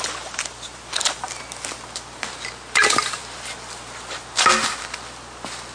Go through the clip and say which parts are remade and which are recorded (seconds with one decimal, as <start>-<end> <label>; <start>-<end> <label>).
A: 0.0-5.7 recorded